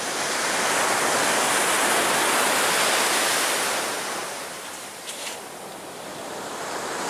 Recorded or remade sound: remade